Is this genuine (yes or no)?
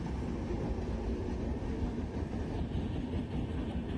yes